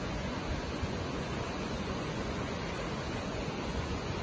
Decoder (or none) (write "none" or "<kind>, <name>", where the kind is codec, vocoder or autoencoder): vocoder, Vocos